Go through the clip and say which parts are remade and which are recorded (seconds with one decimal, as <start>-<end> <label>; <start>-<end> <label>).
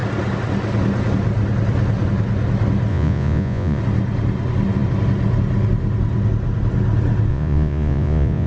0.0-2.9 recorded; 2.9-3.8 remade; 3.8-7.3 recorded; 7.3-8.5 remade